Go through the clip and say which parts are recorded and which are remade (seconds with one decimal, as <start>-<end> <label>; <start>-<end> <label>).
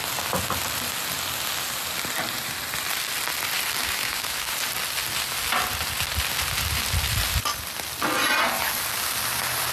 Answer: 0.0-3.8 recorded; 3.8-4.5 remade; 4.5-9.7 recorded